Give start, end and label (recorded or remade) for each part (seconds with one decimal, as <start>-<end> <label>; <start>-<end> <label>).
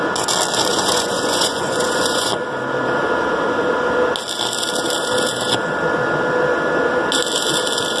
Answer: 0.0-0.7 recorded; 0.7-2.3 remade; 2.3-8.0 recorded